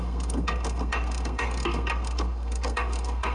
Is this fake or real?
fake